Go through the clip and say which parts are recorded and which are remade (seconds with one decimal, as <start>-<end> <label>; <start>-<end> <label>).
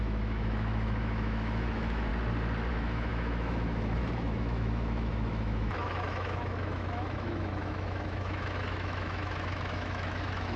0.0-2.1 remade; 2.1-2.7 recorded; 2.7-10.6 remade